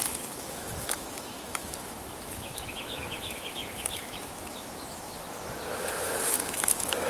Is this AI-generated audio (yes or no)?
yes